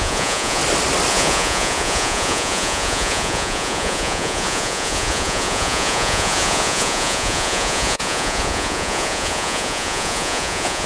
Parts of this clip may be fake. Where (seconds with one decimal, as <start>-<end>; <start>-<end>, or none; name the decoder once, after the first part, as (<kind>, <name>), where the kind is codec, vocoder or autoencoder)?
0.0-0.6 (vocoder, Vocos); 1.1-10.9